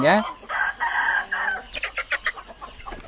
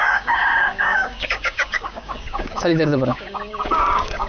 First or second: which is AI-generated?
second